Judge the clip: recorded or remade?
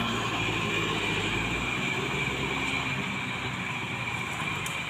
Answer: recorded